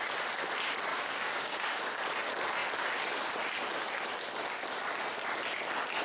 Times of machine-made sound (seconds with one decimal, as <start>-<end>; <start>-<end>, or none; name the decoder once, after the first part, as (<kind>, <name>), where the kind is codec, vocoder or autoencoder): 0.9-1.8 (codec, DAC)